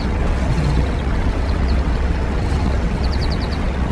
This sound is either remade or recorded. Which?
remade